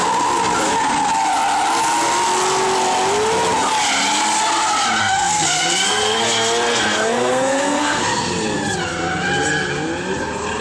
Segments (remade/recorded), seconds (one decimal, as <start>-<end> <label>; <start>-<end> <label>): 0.0-5.0 recorded; 5.0-6.2 remade; 6.2-6.7 recorded; 6.7-8.0 remade; 8.0-10.6 recorded